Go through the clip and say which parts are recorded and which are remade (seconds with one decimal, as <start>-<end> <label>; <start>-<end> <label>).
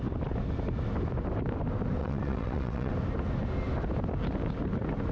0.0-2.0 recorded; 2.0-2.9 remade; 2.9-5.1 recorded